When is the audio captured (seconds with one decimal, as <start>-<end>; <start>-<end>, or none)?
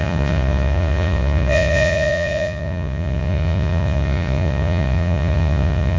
none